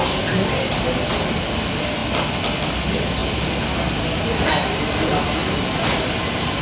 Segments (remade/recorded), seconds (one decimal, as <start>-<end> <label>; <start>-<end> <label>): 0.0-6.6 recorded